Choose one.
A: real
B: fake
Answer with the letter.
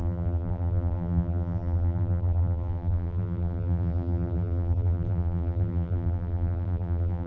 B